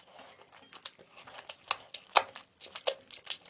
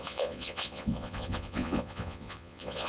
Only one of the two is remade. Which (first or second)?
second